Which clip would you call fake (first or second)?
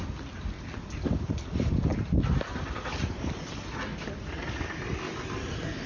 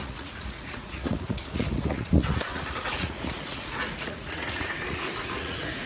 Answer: second